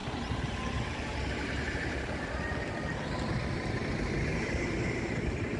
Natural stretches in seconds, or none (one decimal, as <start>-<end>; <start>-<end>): 2.3-4.3; 5.1-5.6